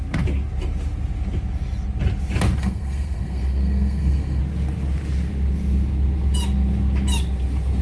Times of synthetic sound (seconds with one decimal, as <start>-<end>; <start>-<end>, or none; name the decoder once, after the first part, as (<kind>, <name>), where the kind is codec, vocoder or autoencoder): 2.6-4.4 (codec, SNAC)